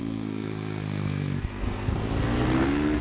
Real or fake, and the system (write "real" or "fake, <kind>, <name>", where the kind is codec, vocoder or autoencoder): fake, codec, SNAC